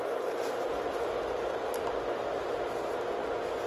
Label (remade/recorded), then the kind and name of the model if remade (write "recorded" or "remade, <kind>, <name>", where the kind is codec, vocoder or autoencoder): recorded